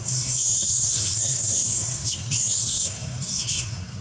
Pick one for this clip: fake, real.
fake